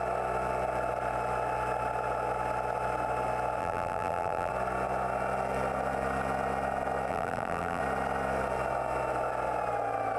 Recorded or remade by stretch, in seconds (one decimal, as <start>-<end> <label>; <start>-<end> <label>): 0.0-3.6 recorded; 3.6-4.5 remade; 4.5-7.1 recorded; 7.1-7.8 remade; 7.8-10.2 recorded